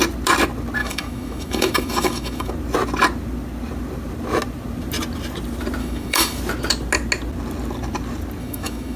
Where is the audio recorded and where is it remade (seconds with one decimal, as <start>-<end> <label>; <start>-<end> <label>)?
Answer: 0.0-0.8 recorded; 0.8-2.5 remade; 2.5-5.8 recorded; 5.8-6.4 remade; 6.4-8.4 recorded; 8.4-9.0 remade